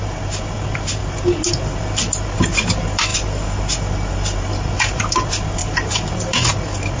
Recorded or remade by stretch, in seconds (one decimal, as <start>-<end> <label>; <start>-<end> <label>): 0.0-3.1 recorded; 3.1-5.1 remade; 5.1-5.6 recorded; 5.6-6.1 remade; 6.1-7.0 recorded